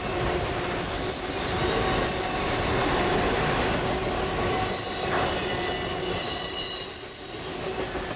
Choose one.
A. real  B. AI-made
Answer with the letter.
A